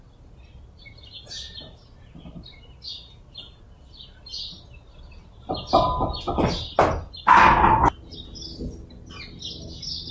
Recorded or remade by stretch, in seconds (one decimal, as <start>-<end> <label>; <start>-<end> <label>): 0.0-10.1 recorded